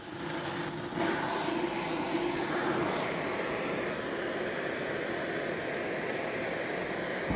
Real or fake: real